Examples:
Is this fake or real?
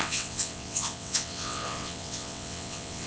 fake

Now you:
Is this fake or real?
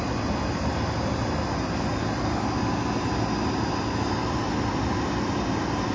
real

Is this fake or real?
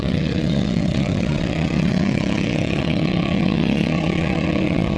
fake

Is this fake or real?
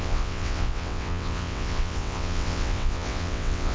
fake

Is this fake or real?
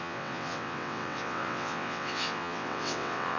fake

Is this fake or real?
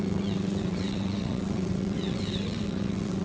fake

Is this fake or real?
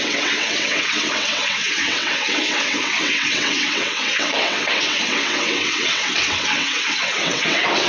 fake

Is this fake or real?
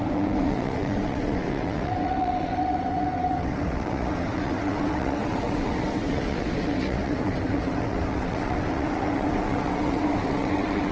fake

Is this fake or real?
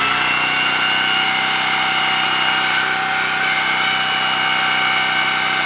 real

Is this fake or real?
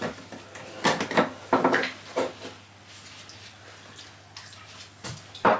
real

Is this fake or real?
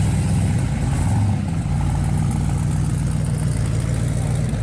real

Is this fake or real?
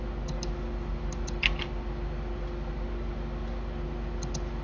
real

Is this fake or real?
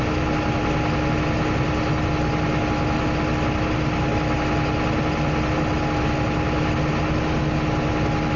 real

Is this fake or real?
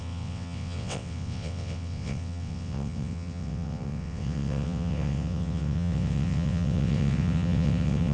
fake